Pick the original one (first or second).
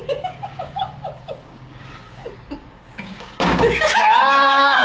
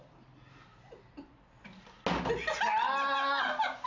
second